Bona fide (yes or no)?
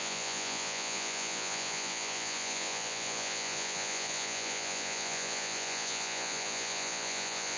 no